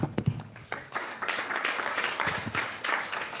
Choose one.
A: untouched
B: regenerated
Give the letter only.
B